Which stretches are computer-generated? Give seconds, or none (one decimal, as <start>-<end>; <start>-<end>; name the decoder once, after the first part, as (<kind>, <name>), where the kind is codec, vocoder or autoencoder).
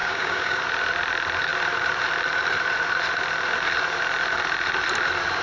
0.0-0.6 (codec, DAC)